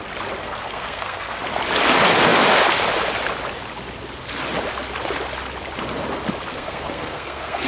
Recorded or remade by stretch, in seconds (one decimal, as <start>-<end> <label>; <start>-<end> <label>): 0.0-0.4 recorded; 0.4-1.4 remade; 1.4-6.5 recorded; 6.5-7.7 remade